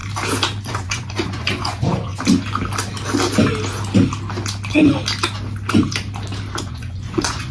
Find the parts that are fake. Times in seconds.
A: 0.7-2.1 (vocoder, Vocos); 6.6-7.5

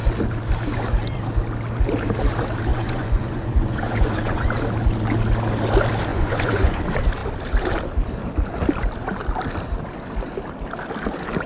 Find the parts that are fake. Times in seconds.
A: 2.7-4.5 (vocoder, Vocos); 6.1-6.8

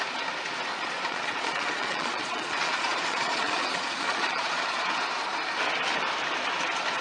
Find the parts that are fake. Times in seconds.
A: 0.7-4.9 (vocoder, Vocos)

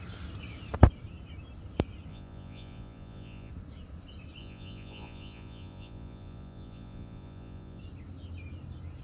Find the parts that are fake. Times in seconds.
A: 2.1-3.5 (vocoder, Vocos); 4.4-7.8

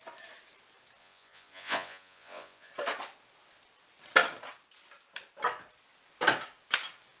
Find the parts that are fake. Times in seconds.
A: 1.0-2.7 (vocoder, Vocos)